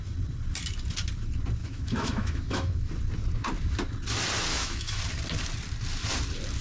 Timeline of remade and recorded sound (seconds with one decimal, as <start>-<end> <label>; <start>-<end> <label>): 0.0-1.6 recorded; 1.6-2.9 remade; 2.9-4.5 recorded; 4.5-5.0 remade; 5.0-6.6 recorded